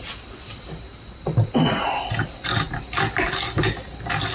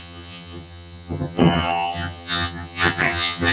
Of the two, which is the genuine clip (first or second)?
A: first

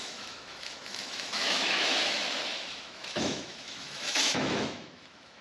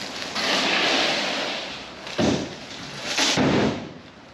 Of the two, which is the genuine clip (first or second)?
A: second